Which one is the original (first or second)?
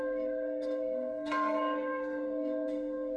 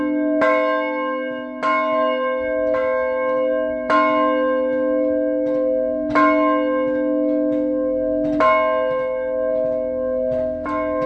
second